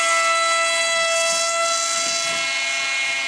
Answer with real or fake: real